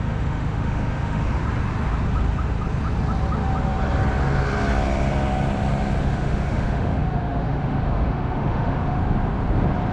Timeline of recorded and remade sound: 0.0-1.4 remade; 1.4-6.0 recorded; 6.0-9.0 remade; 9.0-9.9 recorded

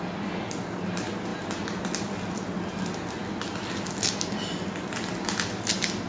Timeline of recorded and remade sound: 0.0-6.1 recorded

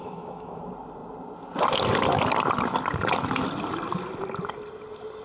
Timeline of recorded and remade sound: 0.0-0.6 remade; 0.6-5.2 recorded

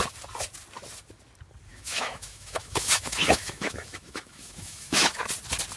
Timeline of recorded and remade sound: 0.0-1.7 recorded; 1.7-5.2 remade; 5.2-5.8 recorded

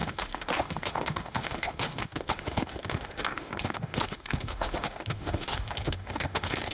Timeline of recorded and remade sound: 0.0-6.7 remade